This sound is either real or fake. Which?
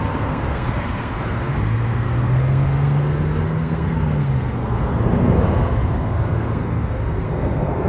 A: fake